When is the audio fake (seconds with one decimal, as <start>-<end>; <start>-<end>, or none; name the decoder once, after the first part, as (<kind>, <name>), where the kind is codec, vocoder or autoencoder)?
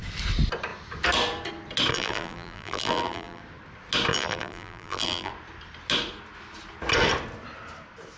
1.9-3.4 (vocoder, BigVGAN v2); 4.1-5.3